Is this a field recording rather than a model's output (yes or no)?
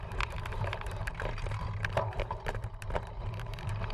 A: no